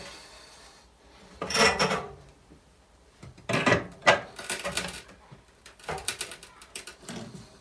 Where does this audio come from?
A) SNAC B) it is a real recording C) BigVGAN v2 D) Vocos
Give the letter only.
C